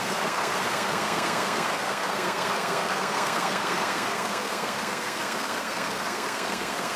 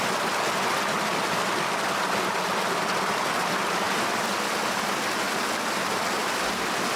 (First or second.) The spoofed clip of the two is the first